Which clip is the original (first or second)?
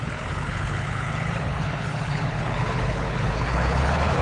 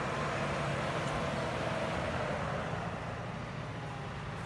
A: second